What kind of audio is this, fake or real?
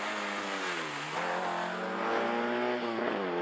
real